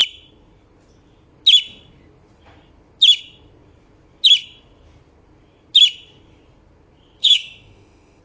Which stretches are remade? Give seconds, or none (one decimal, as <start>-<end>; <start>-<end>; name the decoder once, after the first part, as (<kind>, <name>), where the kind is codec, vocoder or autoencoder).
7.2-8.2 (autoencoder, DAC-VAE)